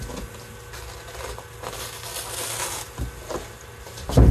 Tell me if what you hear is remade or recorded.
recorded